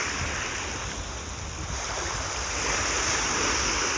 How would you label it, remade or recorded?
recorded